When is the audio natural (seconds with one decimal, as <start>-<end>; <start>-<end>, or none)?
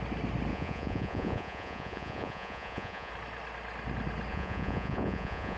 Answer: 0.0-0.5; 3.1-4.3